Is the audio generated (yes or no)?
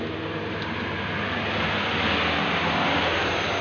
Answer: no